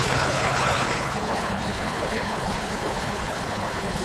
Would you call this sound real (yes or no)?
no